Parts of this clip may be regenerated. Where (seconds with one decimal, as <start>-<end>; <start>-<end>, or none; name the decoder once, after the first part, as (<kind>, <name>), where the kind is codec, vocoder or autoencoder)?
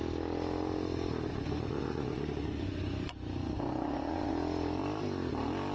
1.3-4.3 (vocoder, Vocos)